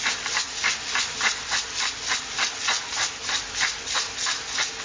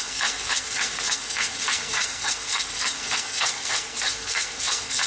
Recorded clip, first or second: first